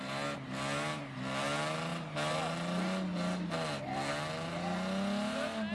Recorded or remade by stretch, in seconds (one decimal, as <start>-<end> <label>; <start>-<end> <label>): 0.0-5.7 recorded